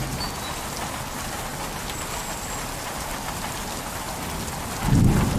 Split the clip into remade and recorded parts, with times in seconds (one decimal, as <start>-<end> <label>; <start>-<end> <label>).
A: 0.0-5.4 recorded